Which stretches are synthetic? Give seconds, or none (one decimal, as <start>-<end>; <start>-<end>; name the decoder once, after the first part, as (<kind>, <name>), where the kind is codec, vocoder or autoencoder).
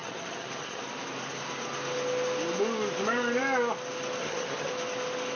0.0-0.8 (vocoder, HiFi-GAN); 4.2-4.7